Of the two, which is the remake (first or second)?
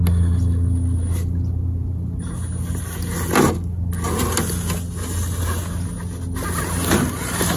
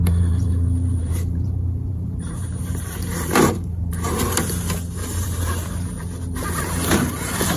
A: second